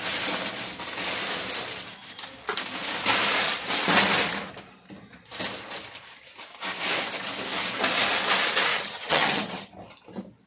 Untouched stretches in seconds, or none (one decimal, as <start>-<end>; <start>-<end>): 0.0-8.7; 9.7-10.5

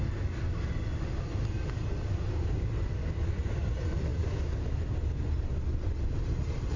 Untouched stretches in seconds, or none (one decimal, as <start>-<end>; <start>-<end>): 0.0-6.8

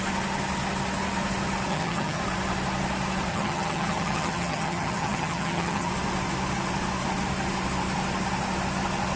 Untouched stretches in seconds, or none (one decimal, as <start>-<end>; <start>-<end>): 0.0-1.7; 2.2-3.3; 5.9-9.2

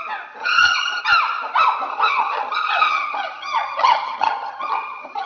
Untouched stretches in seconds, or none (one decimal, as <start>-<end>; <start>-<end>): 0.0-0.4; 1.0-1.9